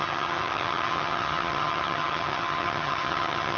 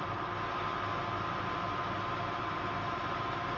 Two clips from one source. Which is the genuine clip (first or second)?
second